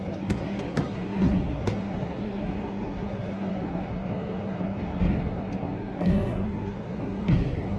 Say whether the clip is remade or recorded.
remade